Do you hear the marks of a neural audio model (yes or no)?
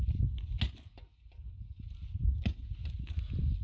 no